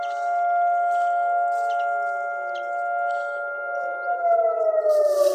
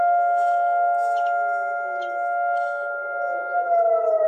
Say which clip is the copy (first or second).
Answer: second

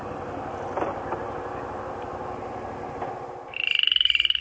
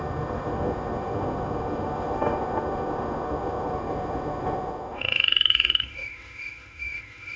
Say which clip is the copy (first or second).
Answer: second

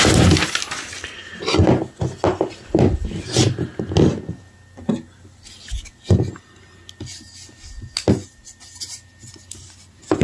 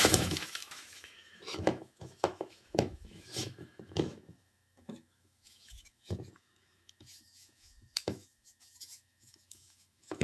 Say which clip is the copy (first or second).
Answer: second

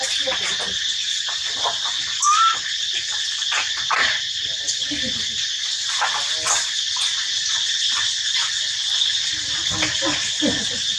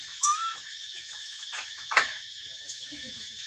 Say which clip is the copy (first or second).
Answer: second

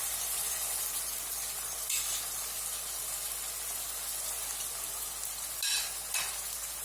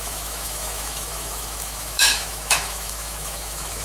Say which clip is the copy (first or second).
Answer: second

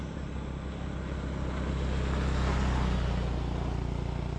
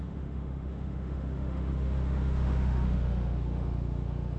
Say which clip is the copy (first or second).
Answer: second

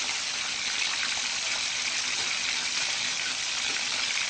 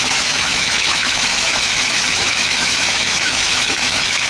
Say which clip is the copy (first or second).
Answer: second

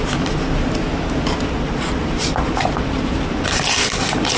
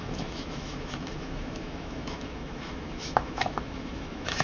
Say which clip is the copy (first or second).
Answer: second